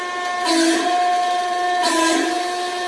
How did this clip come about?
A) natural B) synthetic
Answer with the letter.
A